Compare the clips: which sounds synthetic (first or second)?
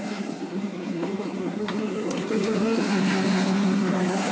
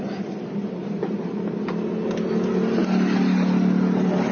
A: first